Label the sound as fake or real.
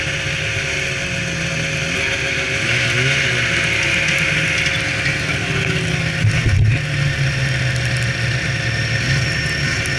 real